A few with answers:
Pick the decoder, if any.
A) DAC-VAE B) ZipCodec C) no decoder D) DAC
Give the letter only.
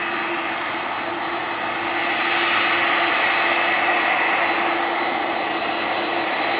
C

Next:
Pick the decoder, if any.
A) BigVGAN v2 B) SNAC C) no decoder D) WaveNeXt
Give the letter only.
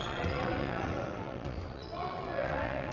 D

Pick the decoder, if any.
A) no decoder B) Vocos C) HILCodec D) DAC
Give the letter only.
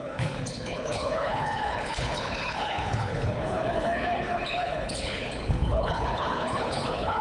C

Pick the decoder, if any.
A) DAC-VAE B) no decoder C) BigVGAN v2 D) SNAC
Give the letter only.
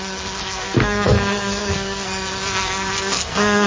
D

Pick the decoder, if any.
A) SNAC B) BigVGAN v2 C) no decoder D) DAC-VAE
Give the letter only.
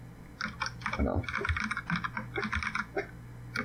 C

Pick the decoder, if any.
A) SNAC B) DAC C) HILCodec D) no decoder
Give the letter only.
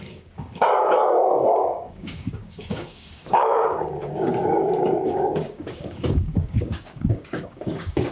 B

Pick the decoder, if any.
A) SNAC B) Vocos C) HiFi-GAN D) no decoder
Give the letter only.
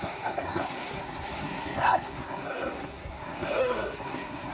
A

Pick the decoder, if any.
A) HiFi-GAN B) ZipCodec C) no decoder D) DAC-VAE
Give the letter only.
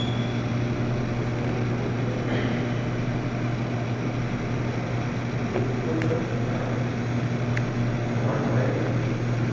C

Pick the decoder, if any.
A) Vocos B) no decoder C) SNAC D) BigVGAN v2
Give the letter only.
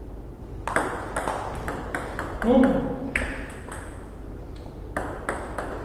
B